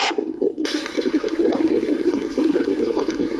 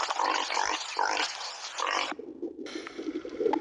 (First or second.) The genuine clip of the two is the second